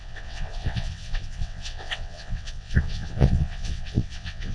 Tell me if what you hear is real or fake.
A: fake